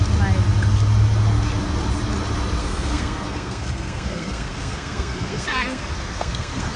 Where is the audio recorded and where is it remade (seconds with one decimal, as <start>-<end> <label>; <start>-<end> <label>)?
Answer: 0.0-2.6 recorded; 2.6-6.8 remade

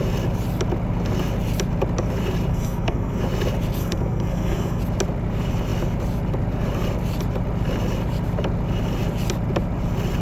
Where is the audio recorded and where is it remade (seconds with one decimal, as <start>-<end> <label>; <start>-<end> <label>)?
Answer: 0.0-2.5 recorded; 2.5-3.2 remade; 3.2-3.8 recorded; 3.8-4.8 remade; 4.8-10.2 recorded